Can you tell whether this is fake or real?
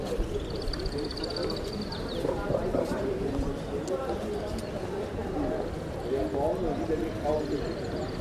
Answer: real